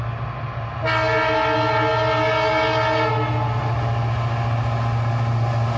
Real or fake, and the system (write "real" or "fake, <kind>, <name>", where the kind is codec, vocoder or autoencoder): real